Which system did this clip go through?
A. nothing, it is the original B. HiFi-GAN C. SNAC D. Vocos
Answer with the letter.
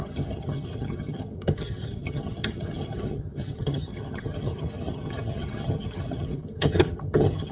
B